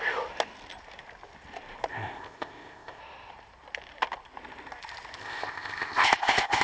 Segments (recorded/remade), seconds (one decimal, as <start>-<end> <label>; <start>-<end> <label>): 0.0-1.9 recorded; 1.9-3.0 remade; 3.0-5.2 recorded; 5.2-6.6 remade